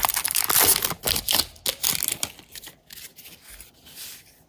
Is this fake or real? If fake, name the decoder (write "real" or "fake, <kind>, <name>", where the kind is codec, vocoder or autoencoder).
real